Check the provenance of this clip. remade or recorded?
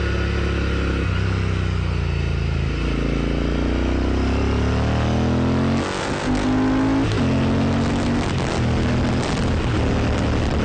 recorded